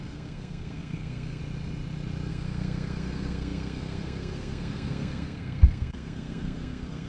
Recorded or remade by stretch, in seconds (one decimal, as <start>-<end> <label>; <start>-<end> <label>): 0.0-1.4 remade; 1.4-2.3 recorded; 2.3-7.1 remade